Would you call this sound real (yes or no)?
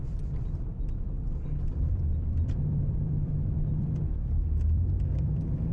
no